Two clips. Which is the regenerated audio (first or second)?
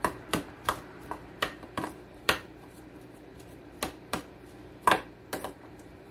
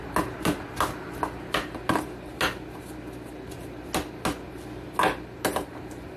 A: first